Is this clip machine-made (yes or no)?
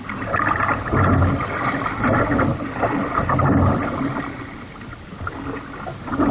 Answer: no